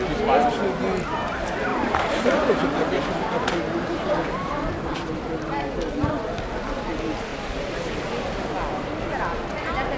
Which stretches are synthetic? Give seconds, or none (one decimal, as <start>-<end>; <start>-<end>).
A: 1.7-4.7; 7.3-8.1